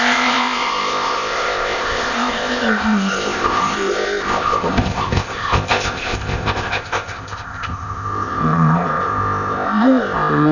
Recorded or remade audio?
remade